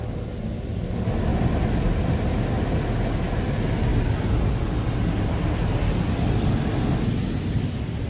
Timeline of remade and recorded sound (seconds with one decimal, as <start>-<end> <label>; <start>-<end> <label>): 0.0-1.3 recorded; 1.3-2.0 remade; 2.0-8.1 recorded